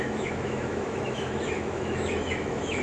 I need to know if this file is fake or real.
fake